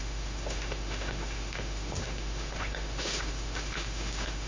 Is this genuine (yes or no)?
no